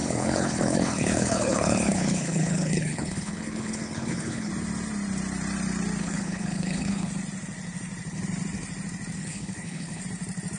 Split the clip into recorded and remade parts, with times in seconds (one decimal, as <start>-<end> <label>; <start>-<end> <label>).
0.0-4.5 remade; 4.5-6.0 recorded; 6.0-7.1 remade; 7.1-9.2 recorded; 9.2-10.0 remade; 10.0-10.6 recorded